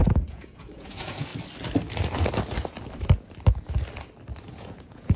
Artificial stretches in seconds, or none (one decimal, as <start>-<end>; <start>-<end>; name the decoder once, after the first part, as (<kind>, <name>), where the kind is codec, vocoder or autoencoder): 0.0-1.3 (vocoder, Vocos); 4.4-5.2